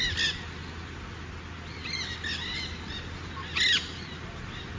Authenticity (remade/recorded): recorded